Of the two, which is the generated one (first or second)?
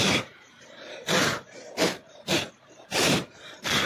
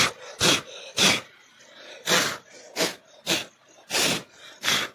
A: first